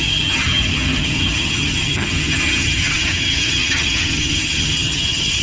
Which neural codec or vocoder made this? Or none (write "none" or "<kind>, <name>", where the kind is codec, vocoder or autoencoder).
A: vocoder, HiFi-GAN